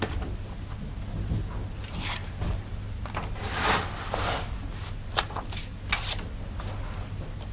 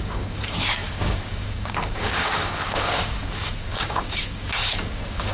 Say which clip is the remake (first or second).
second